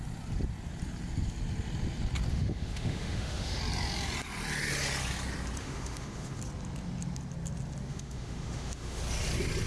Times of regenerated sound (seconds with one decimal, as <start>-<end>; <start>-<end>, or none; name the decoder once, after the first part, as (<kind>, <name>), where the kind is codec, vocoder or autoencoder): 2.3-3.6 (autoencoder, DAC-VAE); 5.6-6.4; 7.9-9.0